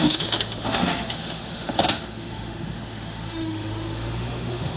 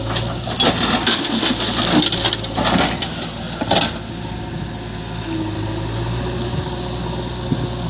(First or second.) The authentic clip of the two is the second